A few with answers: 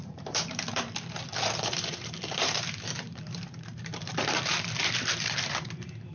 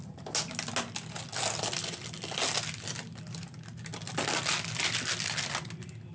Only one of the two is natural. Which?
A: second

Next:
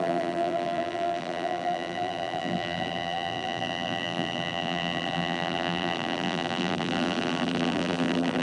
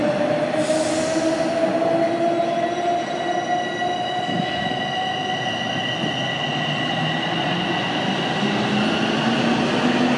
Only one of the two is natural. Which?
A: second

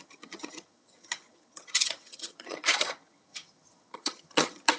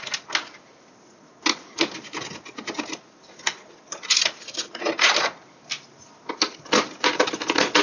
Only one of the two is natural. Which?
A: second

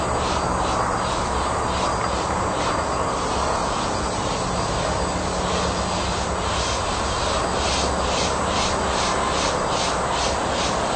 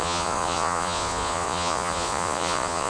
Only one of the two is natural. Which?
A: first